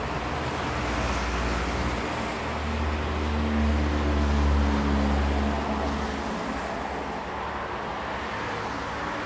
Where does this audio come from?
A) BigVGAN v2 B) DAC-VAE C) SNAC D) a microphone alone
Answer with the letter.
D